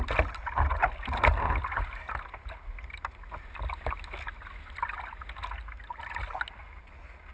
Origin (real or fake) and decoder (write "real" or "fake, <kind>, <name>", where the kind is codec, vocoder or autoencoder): real